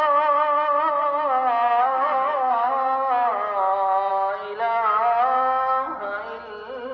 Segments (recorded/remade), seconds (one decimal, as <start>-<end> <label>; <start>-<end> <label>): 0.0-1.8 recorded; 1.8-2.7 remade; 2.7-6.9 recorded